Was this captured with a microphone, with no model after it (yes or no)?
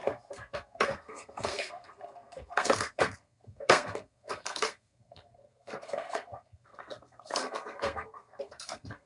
no